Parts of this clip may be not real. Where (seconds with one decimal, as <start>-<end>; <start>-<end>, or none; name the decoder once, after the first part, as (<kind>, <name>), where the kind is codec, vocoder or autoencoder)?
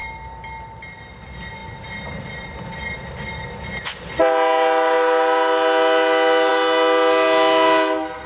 none